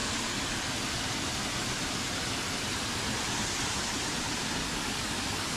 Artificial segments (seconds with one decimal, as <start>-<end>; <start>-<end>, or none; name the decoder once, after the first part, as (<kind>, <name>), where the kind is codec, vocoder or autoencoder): 4.6-5.6 (codec, DAC)